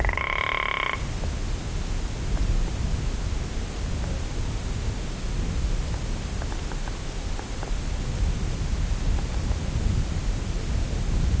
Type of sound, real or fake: real